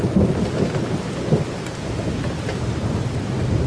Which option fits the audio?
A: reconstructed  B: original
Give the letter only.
B